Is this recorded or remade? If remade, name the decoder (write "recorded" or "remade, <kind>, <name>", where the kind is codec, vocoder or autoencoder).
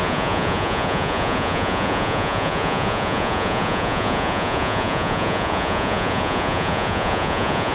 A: remade, vocoder, Vocos